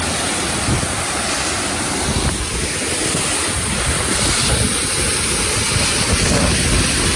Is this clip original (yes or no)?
yes